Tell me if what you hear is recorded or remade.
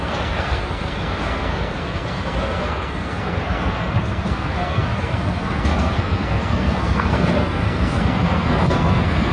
remade